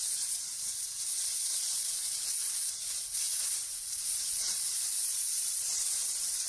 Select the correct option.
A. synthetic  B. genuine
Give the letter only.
A